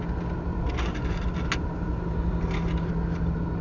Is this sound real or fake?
real